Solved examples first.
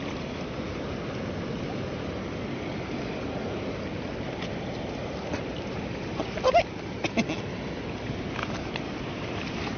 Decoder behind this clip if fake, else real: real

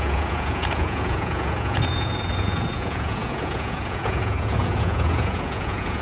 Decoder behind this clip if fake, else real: fake, vocoder, Vocos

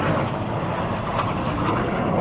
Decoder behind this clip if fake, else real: real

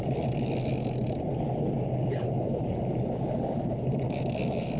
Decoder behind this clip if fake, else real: real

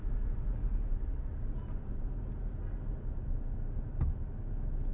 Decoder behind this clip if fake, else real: real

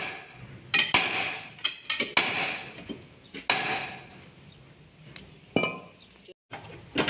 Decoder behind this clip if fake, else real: real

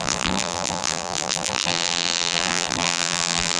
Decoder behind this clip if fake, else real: fake, vocoder, BigVGAN v2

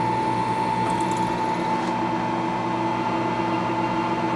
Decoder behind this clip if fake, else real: real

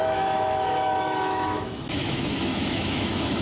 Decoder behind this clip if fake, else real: fake, autoencoder, DAC-VAE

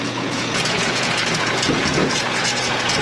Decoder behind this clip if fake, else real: fake, vocoder, Vocos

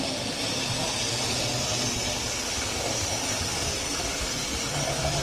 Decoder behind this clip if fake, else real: real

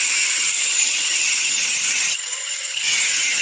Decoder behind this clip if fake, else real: fake, vocoder, HiFi-GAN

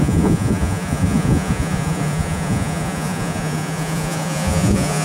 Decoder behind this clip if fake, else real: fake, vocoder, Vocos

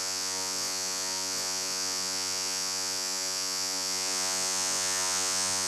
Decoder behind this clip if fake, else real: fake, vocoder, Vocos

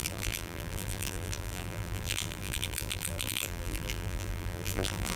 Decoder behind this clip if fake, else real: fake, vocoder, BigVGAN v2